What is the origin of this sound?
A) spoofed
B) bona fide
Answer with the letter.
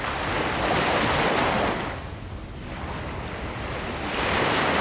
B